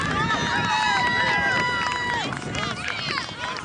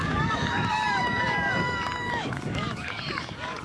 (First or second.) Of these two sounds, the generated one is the second